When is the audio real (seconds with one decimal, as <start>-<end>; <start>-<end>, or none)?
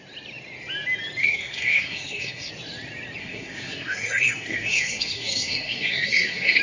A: 0.0-1.2; 2.5-3.2